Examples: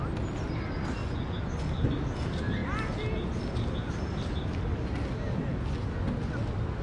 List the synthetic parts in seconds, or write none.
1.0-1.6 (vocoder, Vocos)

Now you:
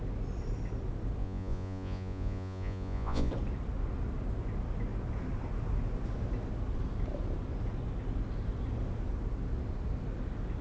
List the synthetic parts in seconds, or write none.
1.2-3.3 (vocoder, Vocos)

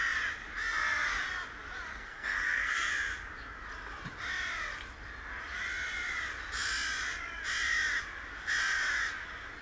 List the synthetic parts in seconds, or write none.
1.9-2.9 (codec, SNAC)

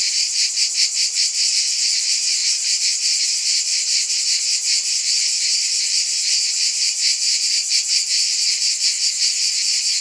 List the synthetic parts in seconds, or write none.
none

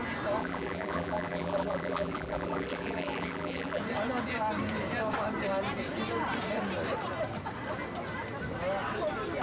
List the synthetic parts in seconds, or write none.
0.4-3.8 (vocoder, BigVGAN v2)